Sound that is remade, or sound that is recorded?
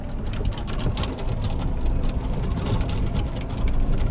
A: recorded